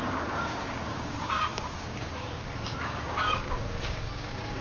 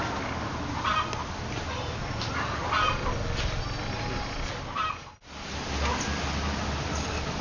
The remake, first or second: first